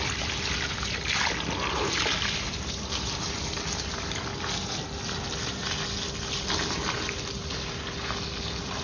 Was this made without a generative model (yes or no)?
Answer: yes